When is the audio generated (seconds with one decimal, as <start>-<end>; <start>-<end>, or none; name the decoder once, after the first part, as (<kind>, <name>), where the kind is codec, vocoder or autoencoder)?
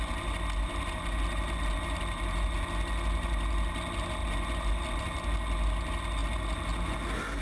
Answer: none